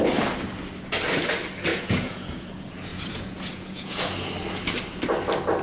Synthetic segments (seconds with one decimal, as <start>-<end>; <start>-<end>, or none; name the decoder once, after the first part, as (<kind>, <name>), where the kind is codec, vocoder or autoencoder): 1.7-2.5 (vocoder, Vocos); 2.9-4.3